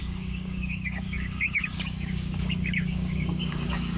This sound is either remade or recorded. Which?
remade